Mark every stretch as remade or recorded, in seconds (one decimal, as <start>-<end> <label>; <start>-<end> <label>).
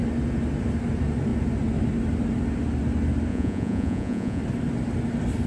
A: 0.0-3.3 recorded; 3.3-4.4 remade; 4.4-5.5 recorded